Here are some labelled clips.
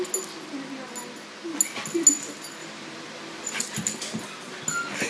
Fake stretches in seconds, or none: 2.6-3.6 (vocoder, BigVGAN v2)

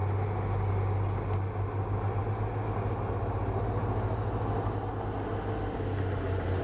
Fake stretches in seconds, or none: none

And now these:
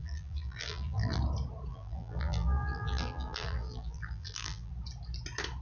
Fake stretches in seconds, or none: 0.0-1.2 (vocoder, BigVGAN v2); 1.7-4.7